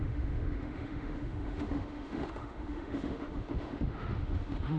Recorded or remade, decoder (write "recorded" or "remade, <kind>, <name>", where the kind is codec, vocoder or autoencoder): remade, autoencoder, DAC-VAE